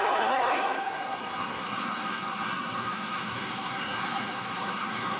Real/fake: fake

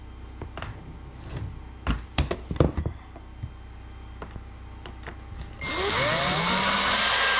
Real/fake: real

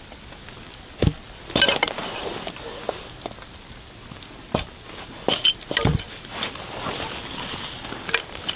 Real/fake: real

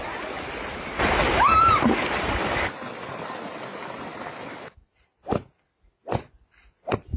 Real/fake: real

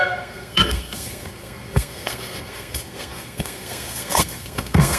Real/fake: fake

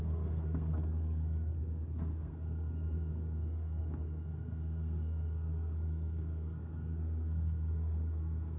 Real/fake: fake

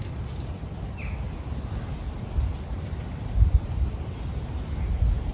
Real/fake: real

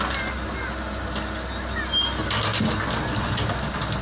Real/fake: real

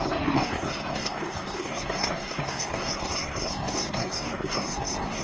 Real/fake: fake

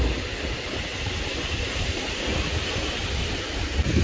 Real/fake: real